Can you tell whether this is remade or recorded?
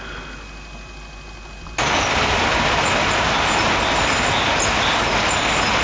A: recorded